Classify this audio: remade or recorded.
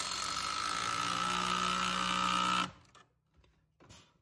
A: recorded